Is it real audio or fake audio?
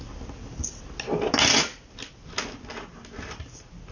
real